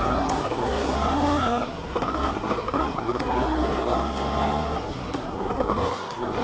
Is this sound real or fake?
fake